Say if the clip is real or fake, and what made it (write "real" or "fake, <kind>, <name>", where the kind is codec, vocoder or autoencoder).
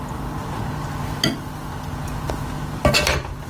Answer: real